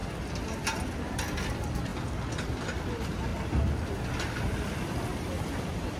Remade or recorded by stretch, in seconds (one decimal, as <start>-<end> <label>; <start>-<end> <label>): 0.0-6.0 recorded

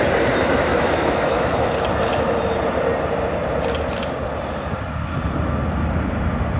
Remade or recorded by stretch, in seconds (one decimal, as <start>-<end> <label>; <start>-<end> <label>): 0.0-0.7 recorded; 0.7-1.7 remade; 1.7-6.6 recorded

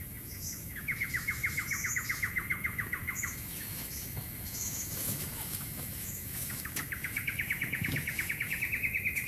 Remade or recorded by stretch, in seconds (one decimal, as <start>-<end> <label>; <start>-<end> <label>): 0.0-9.3 remade

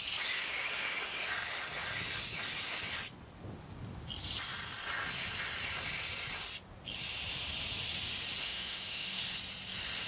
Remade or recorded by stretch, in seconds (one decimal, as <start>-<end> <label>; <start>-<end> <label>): 0.0-8.4 recorded; 8.4-9.2 remade; 9.2-10.1 recorded